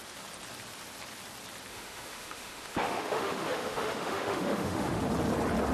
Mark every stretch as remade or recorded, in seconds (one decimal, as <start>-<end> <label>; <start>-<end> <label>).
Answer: 0.0-1.7 recorded; 1.7-5.0 remade; 5.0-5.7 recorded